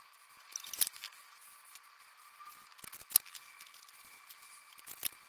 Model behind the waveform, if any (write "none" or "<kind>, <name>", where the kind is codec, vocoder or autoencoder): none